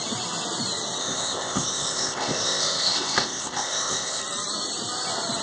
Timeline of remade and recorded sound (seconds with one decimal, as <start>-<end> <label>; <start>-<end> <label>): 0.0-1.0 recorded; 1.0-4.2 remade; 4.2-5.4 recorded

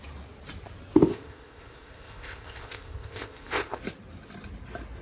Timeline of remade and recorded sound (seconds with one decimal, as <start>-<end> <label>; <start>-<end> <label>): 0.0-1.1 recorded; 1.1-3.8 remade; 3.8-5.0 recorded

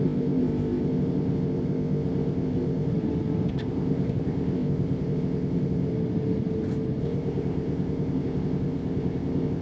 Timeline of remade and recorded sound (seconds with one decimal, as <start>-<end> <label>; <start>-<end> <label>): 0.0-2.9 remade; 2.9-3.5 recorded; 3.5-5.9 remade; 5.9-7.0 recorded; 7.0-9.6 remade

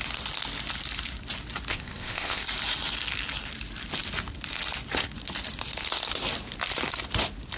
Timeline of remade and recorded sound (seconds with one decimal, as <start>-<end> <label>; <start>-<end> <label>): 0.0-1.7 recorded; 1.7-2.4 remade; 2.4-7.6 recorded

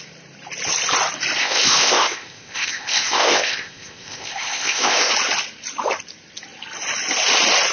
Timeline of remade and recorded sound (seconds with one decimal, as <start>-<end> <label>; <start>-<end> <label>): 0.0-1.4 recorded; 1.4-5.1 remade; 5.1-7.7 recorded

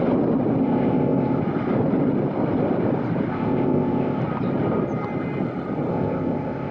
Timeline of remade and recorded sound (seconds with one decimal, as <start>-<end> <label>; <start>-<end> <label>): 0.0-0.6 recorded; 0.6-1.4 remade; 1.4-3.3 recorded; 3.3-4.2 remade; 4.2-5.9 recorded; 5.9-6.7 remade

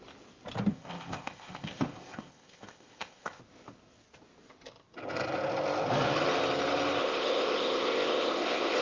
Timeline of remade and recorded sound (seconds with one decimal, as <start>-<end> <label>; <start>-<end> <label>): 0.0-0.7 recorded; 0.7-3.4 remade; 3.4-7.0 recorded; 7.0-8.8 remade